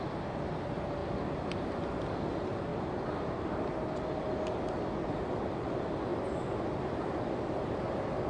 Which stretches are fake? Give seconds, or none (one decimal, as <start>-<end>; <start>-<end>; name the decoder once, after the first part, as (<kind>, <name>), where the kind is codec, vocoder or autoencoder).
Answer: none